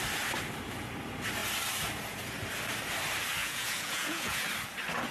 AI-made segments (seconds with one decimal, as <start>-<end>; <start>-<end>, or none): 3.4-4.4